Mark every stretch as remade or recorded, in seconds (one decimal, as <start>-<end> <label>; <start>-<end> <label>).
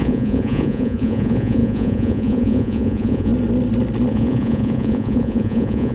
0.0-3.3 remade; 3.3-4.1 recorded; 4.1-5.9 remade